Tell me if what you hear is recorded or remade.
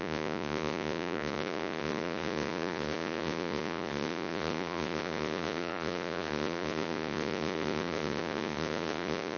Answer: remade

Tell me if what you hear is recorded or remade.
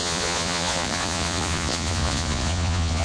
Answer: remade